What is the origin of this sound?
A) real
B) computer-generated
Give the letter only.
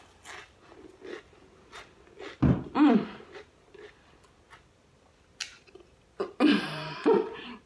A